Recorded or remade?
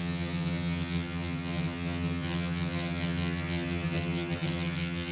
remade